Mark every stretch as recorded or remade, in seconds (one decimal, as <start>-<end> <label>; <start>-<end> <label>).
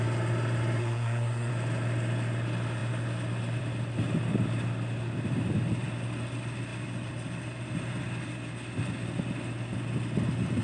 0.0-0.8 recorded; 0.8-1.5 remade; 1.5-10.6 recorded